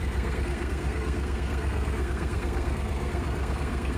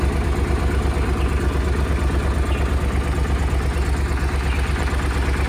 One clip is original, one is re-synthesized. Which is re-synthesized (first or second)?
first